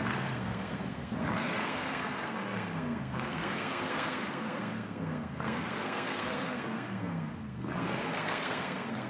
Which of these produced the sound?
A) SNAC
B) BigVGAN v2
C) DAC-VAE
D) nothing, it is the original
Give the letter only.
A